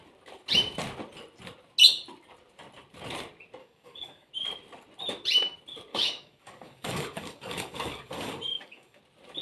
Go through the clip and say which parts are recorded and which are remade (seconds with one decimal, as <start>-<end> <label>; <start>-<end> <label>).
0.0-3.6 recorded; 3.6-4.3 remade; 4.3-5.9 recorded; 5.9-9.0 remade; 9.0-9.4 recorded